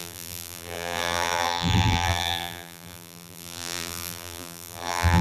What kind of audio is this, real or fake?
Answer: fake